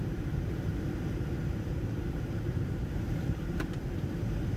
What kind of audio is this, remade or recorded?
remade